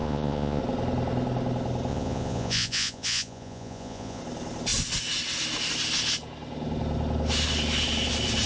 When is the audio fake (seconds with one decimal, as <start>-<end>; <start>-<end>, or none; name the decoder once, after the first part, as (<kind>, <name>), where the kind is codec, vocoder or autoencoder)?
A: 0.0-0.6 (vocoder, Vocos); 1.9-4.2